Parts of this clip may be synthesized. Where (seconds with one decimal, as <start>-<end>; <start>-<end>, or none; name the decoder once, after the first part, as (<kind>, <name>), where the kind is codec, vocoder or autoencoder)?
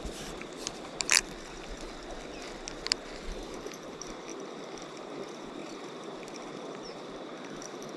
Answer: 0.0-1.2 (vocoder, BigVGAN v2); 3.8-4.3; 5.0-8.0